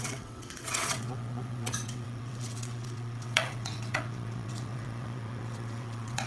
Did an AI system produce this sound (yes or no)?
yes